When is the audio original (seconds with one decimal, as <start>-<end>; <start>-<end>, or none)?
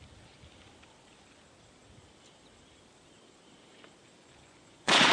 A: 0.0-4.2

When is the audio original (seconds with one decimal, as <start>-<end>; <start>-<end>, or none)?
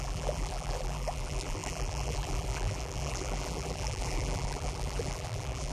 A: none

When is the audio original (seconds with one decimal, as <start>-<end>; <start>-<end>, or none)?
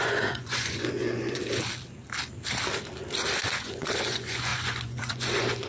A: 1.4-3.4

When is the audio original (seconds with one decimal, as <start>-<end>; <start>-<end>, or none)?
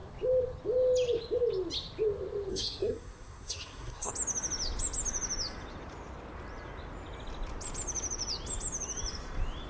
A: 0.0-2.5; 4.1-9.7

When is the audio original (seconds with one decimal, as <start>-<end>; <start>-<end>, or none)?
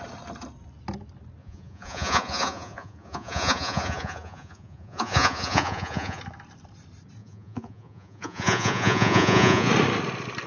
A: 0.0-1.4; 6.2-7.2; 9.7-10.5